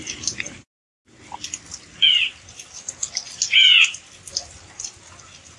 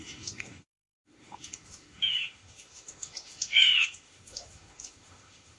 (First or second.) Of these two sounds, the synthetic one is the second